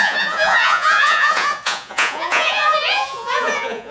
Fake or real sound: fake